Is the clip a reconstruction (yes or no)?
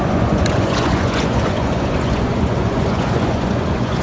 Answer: yes